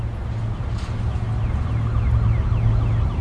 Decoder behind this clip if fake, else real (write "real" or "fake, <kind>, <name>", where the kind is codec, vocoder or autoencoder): real